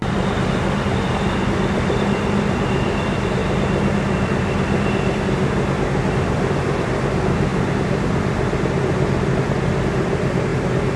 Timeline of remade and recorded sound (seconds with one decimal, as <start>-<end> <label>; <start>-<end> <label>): 0.0-11.0 recorded